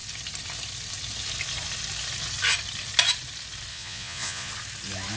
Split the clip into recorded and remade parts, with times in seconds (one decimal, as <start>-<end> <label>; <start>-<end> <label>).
0.0-3.7 recorded; 3.7-4.5 remade; 4.5-5.2 recorded